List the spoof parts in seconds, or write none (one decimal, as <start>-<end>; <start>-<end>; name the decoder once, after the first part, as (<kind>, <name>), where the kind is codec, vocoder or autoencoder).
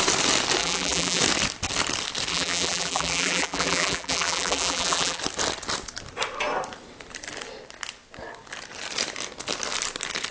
0.6-1.2 (vocoder, BigVGAN v2); 2.3-5.2